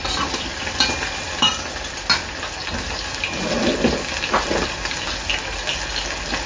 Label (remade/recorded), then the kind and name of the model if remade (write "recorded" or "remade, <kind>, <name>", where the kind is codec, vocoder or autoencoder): recorded